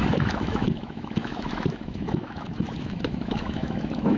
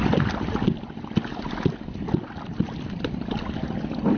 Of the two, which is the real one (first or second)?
second